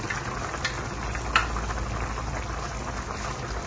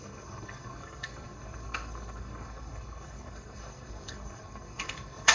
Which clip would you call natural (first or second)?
first